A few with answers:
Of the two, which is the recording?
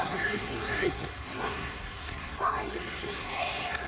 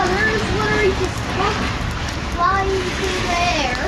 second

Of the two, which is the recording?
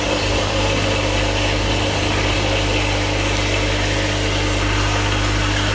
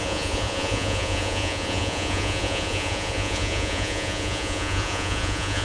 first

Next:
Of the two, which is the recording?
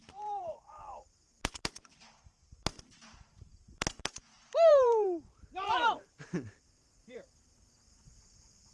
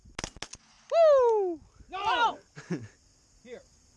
second